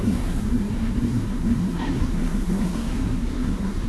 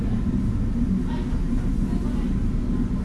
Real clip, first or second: second